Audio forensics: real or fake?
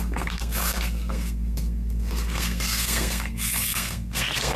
fake